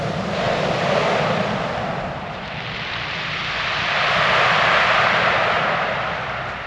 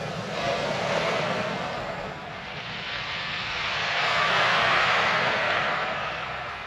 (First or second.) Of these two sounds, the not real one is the second